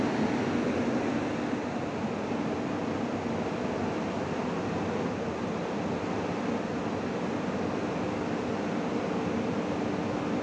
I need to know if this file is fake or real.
real